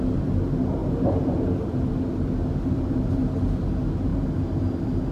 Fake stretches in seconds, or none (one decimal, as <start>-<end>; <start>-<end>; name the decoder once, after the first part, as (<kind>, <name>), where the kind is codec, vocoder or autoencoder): 0.8-2.3 (vocoder, BigVGAN v2); 4.1-4.6